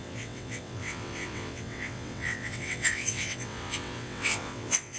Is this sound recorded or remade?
remade